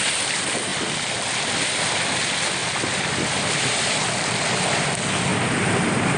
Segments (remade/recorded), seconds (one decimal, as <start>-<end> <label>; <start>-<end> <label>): 0.0-6.2 recorded